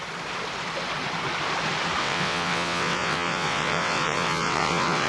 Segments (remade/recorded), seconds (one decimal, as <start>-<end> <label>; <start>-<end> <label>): 0.0-2.0 recorded; 2.0-5.1 remade